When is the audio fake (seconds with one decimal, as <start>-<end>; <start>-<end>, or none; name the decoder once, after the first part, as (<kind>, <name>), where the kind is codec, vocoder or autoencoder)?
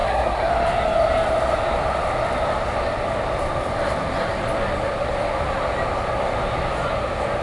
0.0-0.5 (codec, SNAC)